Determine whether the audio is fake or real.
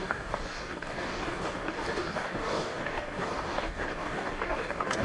fake